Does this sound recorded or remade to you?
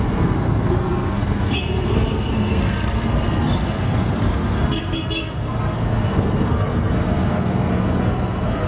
remade